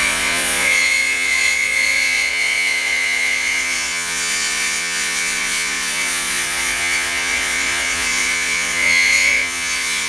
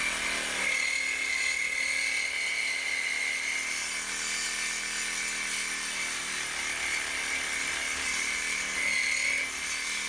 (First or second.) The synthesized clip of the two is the first